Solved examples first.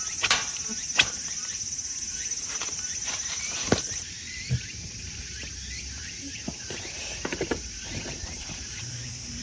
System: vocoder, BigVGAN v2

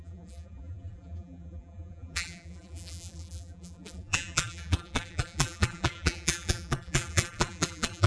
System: vocoder, BigVGAN v2